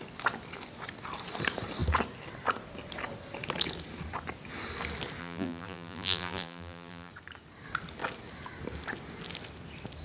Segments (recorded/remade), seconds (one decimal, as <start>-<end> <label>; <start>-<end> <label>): 0.0-5.2 recorded; 5.2-7.1 remade; 7.1-10.0 recorded